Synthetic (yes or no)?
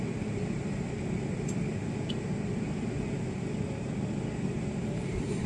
yes